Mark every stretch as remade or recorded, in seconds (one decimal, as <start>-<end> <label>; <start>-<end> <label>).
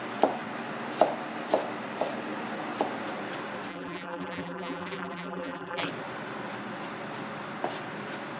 0.0-3.7 recorded; 3.7-5.9 remade; 5.9-8.4 recorded